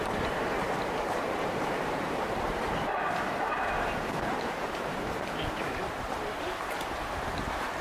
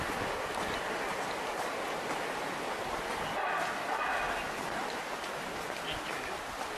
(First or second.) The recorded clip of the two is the second